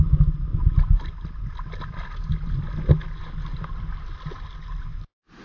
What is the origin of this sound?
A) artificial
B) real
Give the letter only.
B